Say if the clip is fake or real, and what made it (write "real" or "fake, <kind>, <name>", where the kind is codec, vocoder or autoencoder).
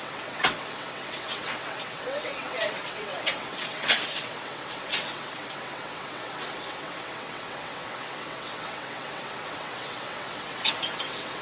fake, vocoder, WaveNeXt